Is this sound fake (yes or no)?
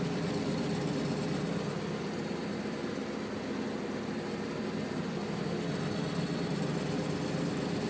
no